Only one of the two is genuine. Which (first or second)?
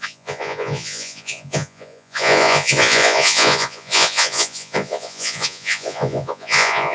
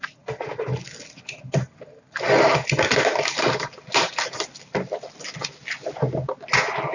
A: second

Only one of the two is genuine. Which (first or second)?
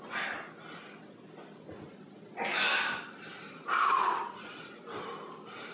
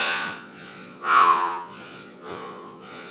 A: first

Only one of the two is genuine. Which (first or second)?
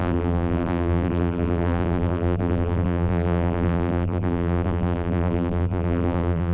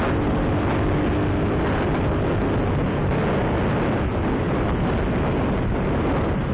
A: second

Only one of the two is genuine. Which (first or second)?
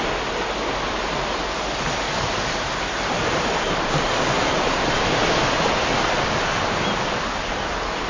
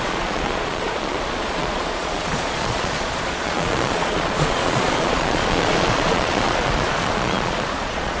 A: first